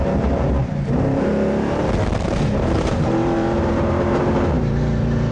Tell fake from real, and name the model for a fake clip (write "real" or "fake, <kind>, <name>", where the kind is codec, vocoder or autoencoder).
fake, vocoder, BigVGAN v2